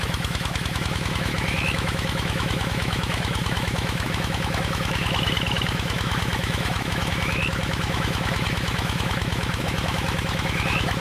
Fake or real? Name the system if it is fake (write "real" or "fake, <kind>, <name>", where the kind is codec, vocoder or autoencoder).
fake, autoencoder, DAC-VAE